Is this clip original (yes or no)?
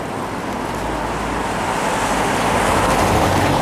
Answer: yes